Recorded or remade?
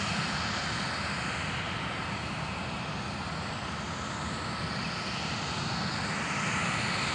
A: recorded